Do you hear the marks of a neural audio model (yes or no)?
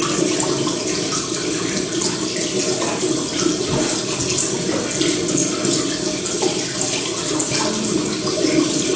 no